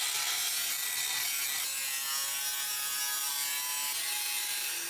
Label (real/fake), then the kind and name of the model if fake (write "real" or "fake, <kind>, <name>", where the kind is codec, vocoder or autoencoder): real